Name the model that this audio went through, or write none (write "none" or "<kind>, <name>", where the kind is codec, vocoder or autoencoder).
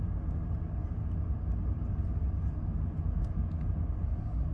none